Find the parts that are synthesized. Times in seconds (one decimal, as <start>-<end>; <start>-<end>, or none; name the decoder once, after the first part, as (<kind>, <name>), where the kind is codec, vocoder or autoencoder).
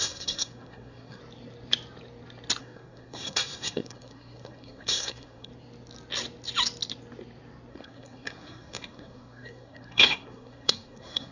0.0-1.2 (codec, SNAC); 2.6-5.5; 7.7-11.3